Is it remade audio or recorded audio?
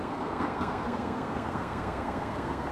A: remade